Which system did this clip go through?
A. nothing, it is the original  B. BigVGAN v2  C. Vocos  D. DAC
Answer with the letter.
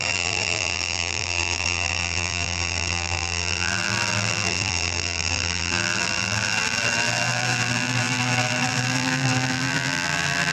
B